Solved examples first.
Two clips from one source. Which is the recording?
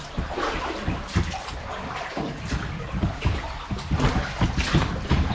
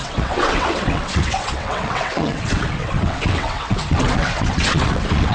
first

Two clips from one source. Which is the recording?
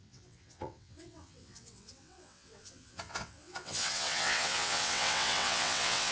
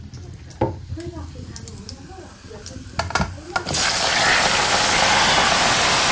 second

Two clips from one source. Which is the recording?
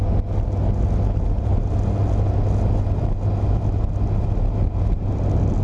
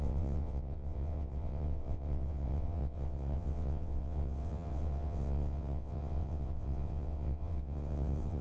first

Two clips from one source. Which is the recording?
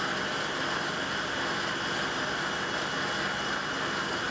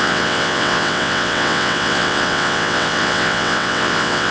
first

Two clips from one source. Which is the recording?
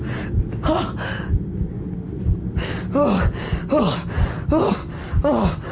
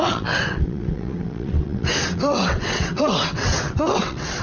first